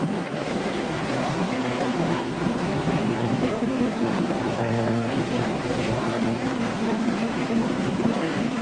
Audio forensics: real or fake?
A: fake